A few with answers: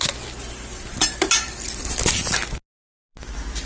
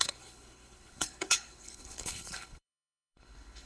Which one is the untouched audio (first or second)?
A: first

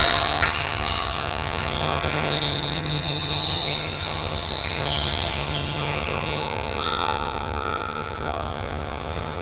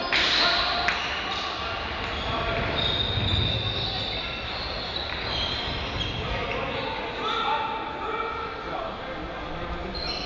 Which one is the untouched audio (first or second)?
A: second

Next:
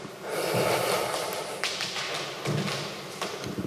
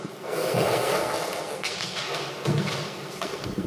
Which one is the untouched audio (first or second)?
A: first